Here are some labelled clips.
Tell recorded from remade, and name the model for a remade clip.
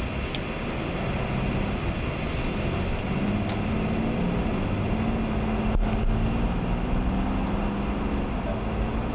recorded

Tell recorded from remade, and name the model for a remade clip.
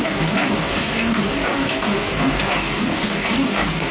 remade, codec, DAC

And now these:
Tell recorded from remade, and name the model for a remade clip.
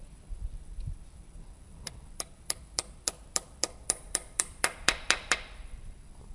remade, vocoder, BigVGAN v2